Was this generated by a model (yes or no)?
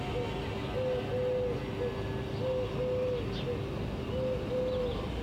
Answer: no